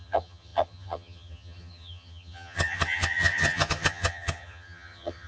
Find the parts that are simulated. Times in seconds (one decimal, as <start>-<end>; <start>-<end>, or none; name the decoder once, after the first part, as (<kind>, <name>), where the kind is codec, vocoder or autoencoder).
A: 0.0-5.3 (vocoder, HiFi-GAN)